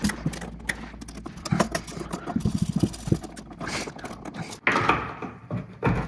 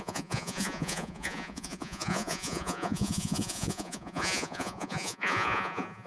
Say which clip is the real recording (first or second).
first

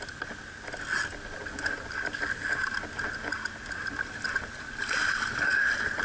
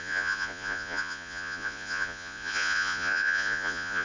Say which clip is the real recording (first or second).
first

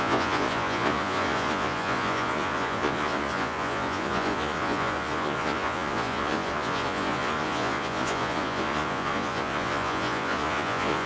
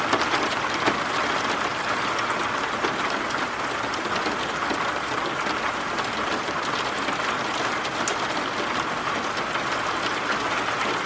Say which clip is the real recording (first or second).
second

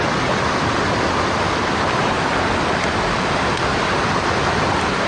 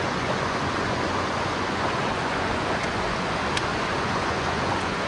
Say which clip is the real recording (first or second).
first